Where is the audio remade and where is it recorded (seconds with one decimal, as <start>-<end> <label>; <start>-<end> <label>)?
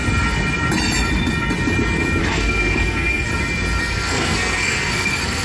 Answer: 0.0-2.2 recorded; 2.2-3.3 remade; 3.3-3.8 recorded; 3.8-5.4 remade